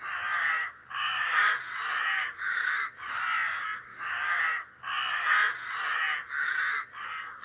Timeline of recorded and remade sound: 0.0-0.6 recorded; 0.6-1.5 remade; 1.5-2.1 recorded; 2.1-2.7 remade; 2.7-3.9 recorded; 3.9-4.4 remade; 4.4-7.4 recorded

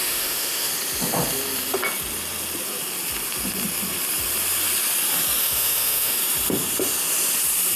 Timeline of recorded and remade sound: 0.0-0.7 remade; 0.7-5.4 recorded; 5.4-6.2 remade; 6.2-7.8 recorded

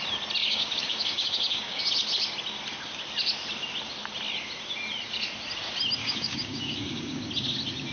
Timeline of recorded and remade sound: 0.0-0.4 recorded; 0.4-1.8 remade; 1.8-6.0 recorded; 6.0-7.3 remade; 7.3-7.9 recorded